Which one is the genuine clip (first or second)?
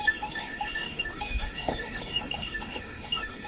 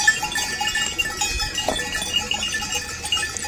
second